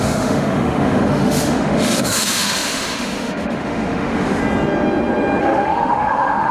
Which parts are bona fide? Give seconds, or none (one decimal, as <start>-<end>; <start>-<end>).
4.4-5.4